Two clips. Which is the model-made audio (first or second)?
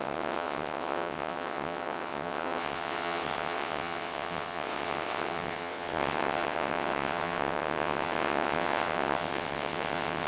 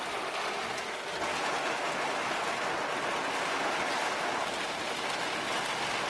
first